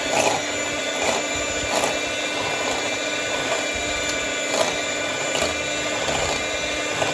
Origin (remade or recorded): recorded